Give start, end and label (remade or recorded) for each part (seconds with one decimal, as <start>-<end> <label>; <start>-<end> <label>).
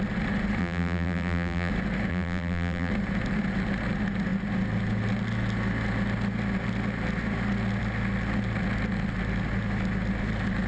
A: 0.0-0.6 recorded; 0.6-1.7 remade; 1.7-2.1 recorded; 2.1-2.9 remade; 2.9-10.7 recorded